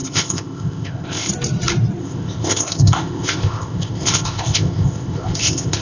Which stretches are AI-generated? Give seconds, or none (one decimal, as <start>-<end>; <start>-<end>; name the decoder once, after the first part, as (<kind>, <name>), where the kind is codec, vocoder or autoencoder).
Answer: 0.0-1.3 (codec, ZipCodec); 2.0-5.8